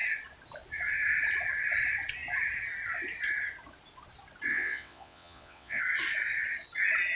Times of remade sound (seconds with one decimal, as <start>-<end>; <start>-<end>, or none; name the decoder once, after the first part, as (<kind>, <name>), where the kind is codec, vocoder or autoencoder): 4.5-5.8 (vocoder, WaveNeXt)